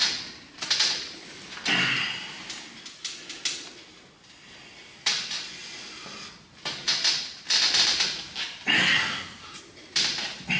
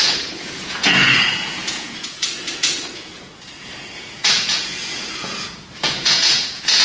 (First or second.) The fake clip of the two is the second